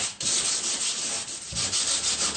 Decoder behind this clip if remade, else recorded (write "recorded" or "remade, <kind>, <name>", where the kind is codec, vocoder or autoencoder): recorded